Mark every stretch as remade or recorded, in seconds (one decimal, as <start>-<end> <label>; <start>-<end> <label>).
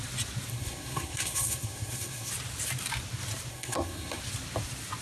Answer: 0.0-0.5 recorded; 0.5-2.3 remade; 2.3-3.5 recorded; 3.5-4.2 remade; 4.2-5.0 recorded